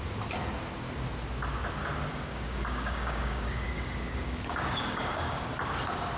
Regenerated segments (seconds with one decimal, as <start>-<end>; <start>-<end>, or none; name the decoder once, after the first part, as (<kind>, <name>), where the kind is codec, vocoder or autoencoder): 2.1-5.5 (codec, DAC)